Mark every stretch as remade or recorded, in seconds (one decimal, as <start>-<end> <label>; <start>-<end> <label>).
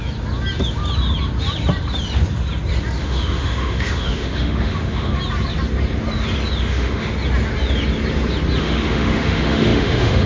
0.0-3.0 recorded; 3.0-5.1 remade; 5.1-6.6 recorded; 6.6-7.1 remade; 7.1-8.6 recorded; 8.6-10.3 remade